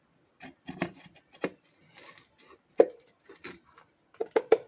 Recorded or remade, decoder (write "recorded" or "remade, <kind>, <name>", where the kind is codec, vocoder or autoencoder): recorded